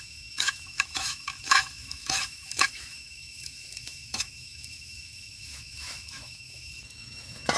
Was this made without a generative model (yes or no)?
no